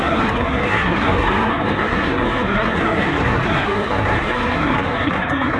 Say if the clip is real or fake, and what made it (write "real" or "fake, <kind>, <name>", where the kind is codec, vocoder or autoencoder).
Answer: fake, codec, SNAC